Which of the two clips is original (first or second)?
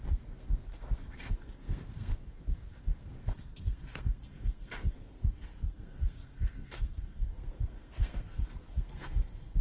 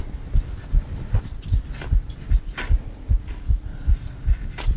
second